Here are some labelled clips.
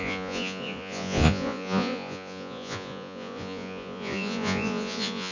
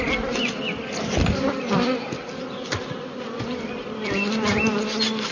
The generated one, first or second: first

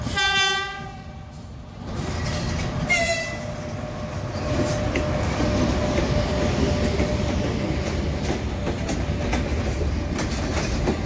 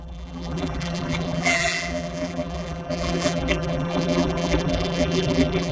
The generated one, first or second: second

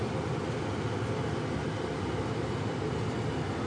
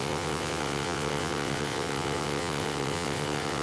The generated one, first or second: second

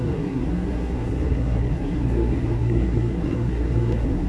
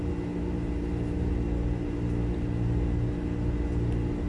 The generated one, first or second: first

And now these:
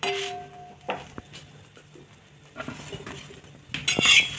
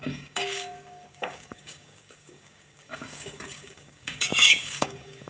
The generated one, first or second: second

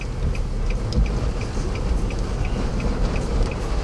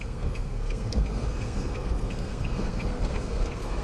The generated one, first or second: second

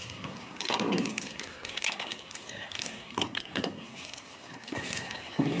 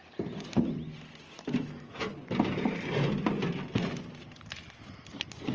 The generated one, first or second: first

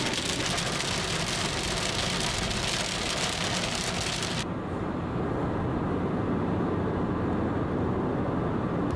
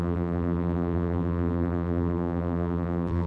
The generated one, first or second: second